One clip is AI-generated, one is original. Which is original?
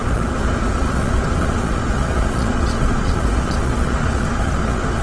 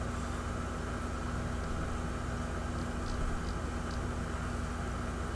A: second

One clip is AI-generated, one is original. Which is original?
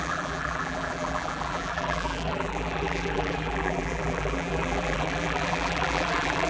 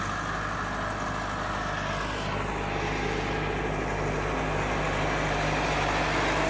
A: second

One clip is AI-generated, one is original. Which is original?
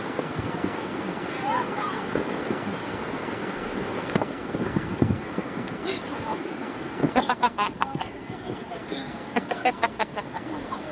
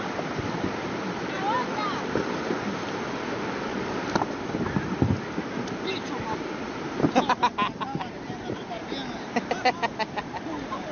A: second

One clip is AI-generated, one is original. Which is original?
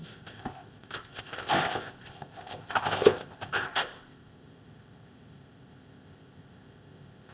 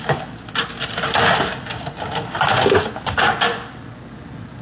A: second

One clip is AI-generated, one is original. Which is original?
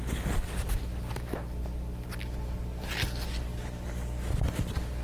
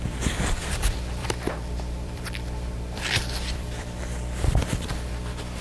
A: first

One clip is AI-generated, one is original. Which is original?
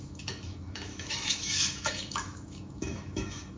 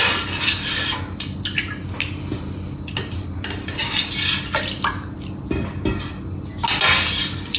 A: second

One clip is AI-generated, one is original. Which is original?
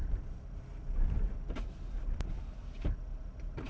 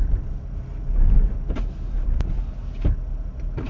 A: second